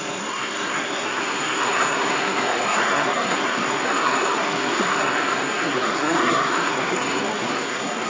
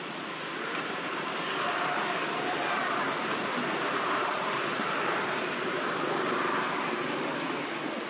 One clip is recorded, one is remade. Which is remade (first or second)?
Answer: first